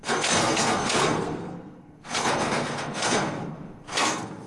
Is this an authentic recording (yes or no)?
no